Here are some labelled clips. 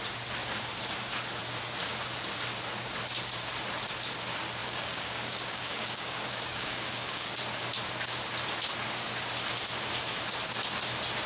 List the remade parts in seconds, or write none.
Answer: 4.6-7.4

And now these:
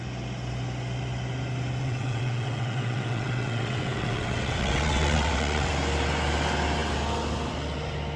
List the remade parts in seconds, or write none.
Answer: 1.8-5.7

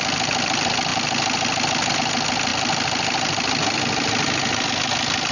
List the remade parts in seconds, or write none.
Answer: 0.9-1.9; 2.5-4.7

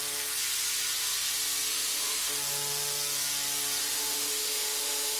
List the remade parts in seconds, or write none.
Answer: 1.7-2.3; 3.8-5.2